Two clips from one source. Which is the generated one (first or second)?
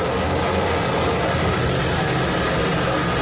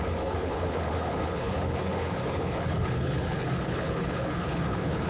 second